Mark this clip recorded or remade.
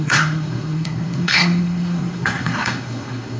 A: remade